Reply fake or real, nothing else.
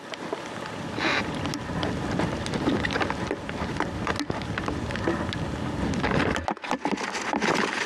real